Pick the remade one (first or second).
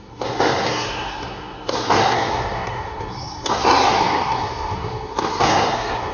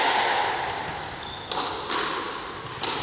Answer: first